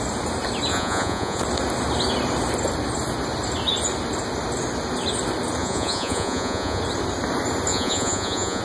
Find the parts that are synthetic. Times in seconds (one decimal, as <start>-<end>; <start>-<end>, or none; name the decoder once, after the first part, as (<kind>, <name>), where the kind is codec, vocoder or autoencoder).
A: 0.7-1.4 (vocoder, Vocos); 5.6-6.8; 7.7-8.6